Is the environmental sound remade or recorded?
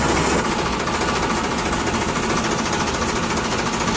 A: recorded